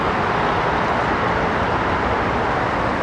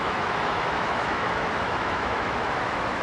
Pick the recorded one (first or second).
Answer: first